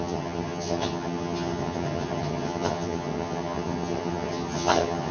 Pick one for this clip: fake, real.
fake